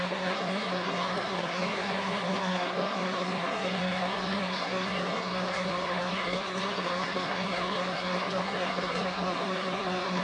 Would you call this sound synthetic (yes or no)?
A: yes